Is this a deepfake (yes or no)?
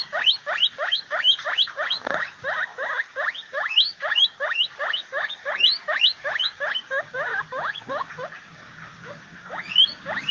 yes